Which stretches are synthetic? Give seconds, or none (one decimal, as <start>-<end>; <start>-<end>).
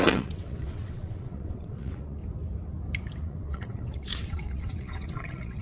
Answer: 0.0-2.2; 3.2-5.6